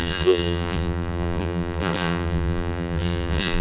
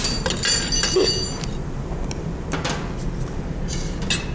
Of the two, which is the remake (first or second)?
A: first